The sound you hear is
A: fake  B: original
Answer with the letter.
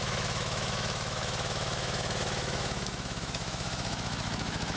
A